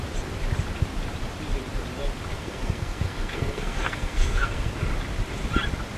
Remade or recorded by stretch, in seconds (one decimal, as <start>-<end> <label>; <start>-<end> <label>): 0.0-2.3 recorded; 2.3-4.7 remade; 4.7-6.0 recorded